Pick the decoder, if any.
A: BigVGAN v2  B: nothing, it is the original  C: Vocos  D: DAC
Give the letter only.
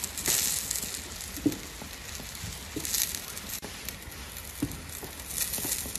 B